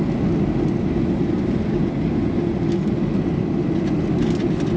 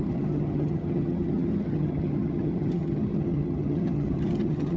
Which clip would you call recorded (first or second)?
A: first